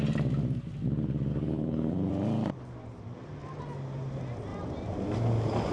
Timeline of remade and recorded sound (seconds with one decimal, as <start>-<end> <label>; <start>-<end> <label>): 0.0-1.3 recorded; 1.3-2.1 remade; 2.1-5.7 recorded